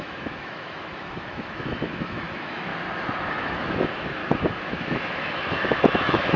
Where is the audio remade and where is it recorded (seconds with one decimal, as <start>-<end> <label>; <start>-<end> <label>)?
0.0-2.7 remade; 2.7-3.3 recorded; 3.3-4.2 remade; 4.2-4.7 recorded; 4.7-6.4 remade